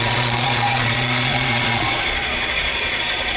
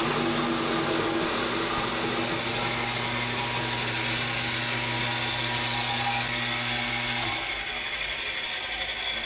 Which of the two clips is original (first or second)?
second